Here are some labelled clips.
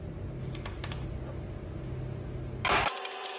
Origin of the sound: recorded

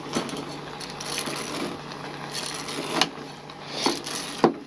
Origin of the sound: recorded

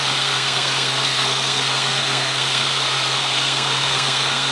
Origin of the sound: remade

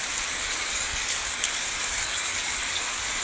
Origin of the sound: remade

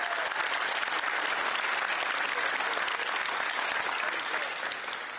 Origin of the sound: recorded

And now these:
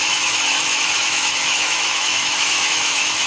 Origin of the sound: remade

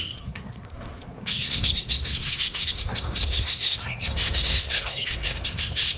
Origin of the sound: remade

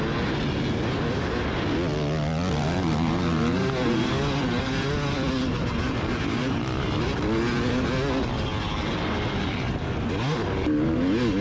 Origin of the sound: recorded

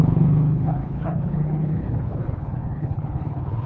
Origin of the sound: remade